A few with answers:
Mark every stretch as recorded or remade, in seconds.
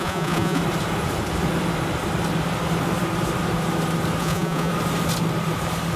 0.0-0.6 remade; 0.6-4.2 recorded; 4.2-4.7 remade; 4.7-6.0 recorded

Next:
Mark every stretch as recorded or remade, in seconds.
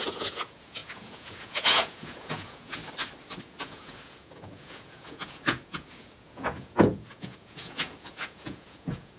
0.0-2.8 remade; 2.8-3.4 recorded; 3.4-9.2 remade